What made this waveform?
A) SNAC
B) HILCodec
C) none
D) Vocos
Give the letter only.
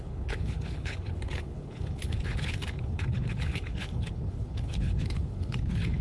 B